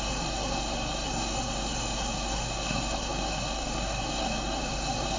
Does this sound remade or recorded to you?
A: remade